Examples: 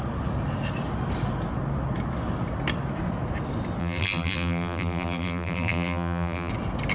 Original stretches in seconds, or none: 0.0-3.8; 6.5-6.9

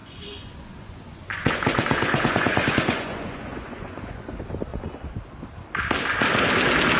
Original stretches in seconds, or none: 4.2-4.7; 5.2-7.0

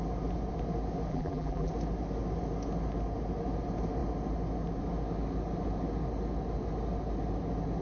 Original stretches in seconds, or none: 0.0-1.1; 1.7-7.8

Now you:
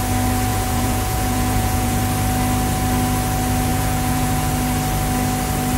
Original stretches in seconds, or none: 0.0-0.5; 2.0-3.7; 4.5-5.8

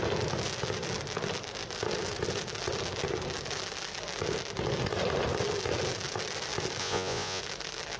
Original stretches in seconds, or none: 0.0-6.8; 7.4-8.0

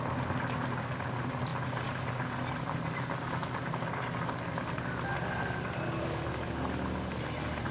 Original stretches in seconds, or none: 0.0-7.7

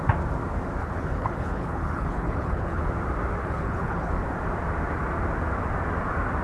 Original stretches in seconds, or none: 0.0-0.8; 2.8-3.4; 4.1-6.4

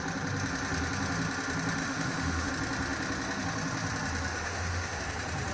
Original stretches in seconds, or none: 0.0-1.8; 2.5-4.3; 5.0-5.5